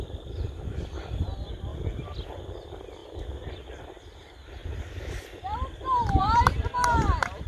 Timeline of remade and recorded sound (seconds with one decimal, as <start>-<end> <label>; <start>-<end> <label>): 0.0-1.7 remade; 1.7-2.3 recorded; 2.3-3.0 remade; 3.0-3.8 recorded; 3.8-4.6 remade; 4.6-6.2 recorded; 6.2-7.5 remade